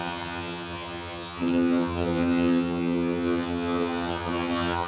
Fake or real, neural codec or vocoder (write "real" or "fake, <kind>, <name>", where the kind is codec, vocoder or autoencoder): fake, vocoder, HiFi-GAN